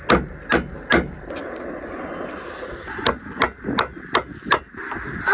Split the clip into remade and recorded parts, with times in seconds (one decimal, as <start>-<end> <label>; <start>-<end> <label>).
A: 0.0-5.3 recorded